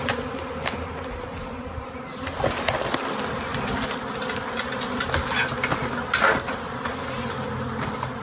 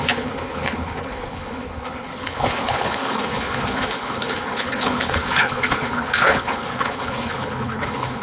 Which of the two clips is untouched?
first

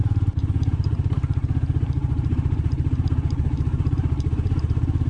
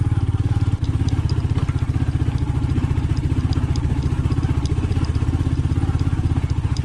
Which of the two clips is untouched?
second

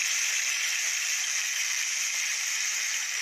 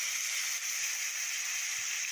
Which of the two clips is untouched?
second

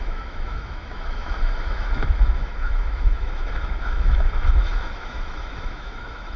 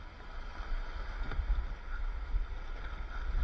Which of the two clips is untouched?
second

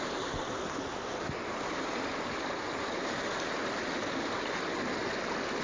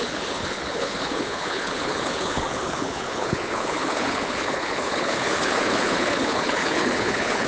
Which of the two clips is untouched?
first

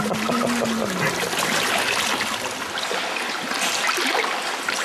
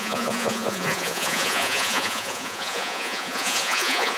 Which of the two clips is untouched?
first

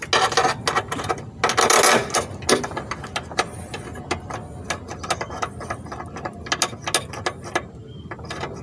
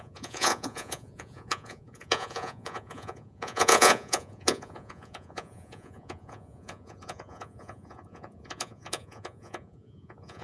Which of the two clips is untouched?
first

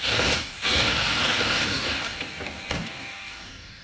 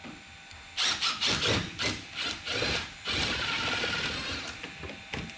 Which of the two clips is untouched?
second